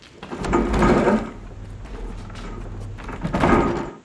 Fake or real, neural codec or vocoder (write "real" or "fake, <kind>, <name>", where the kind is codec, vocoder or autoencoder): real